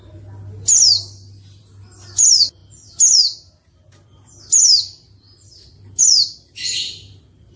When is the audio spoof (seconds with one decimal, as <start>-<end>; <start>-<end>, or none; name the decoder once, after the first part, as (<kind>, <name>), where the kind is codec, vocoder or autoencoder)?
none